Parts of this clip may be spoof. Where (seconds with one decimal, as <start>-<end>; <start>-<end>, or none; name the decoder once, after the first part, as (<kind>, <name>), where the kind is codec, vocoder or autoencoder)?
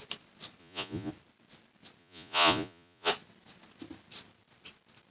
0.6-1.1 (vocoder, Vocos); 2.0-3.1